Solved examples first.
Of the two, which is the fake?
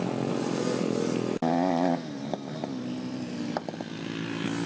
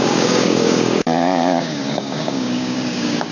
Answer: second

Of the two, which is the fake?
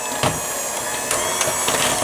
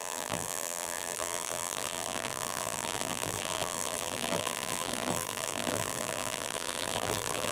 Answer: second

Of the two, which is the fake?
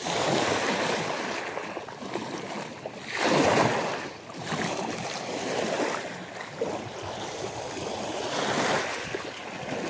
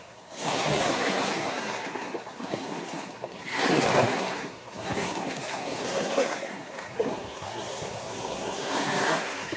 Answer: second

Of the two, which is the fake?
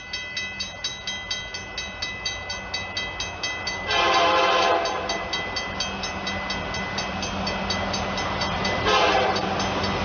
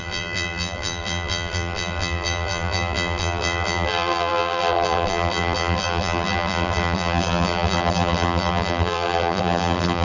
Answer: second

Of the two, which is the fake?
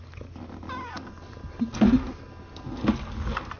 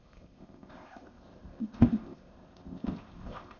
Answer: second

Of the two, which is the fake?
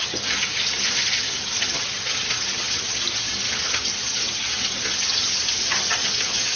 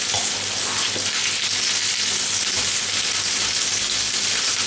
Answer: first